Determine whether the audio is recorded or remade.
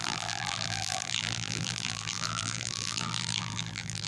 remade